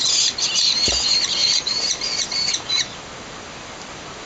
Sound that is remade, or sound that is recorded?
recorded